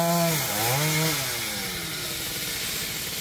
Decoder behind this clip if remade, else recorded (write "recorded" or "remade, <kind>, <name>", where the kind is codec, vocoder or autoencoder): recorded